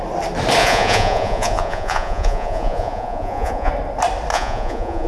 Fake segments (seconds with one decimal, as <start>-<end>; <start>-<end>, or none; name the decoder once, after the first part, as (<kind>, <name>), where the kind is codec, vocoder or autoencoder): 0.6-3.7 (vocoder, Vocos); 4.3-5.1